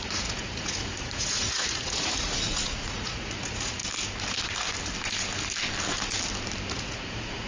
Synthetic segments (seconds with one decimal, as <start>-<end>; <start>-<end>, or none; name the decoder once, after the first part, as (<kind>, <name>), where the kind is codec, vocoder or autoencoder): 0.0-3.8 (vocoder, Vocos); 6.7-7.5